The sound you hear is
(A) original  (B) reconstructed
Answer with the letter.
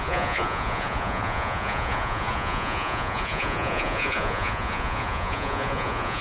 B